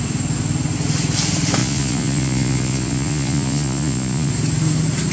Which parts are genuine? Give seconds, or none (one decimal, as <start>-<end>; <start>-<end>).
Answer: 0.0-1.6; 4.3-5.1

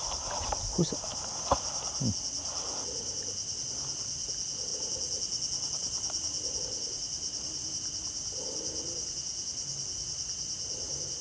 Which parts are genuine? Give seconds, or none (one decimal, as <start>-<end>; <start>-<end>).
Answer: 0.0-11.2

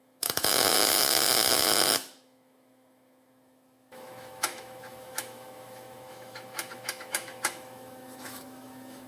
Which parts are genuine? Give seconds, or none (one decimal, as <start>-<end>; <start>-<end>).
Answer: none

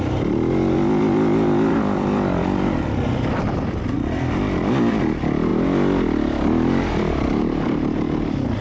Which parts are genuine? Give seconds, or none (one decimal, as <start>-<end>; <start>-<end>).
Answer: 5.5-7.0

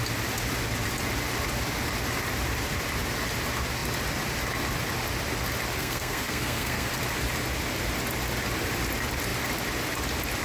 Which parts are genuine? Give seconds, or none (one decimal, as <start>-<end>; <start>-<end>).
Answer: 0.0-5.8; 6.9-10.4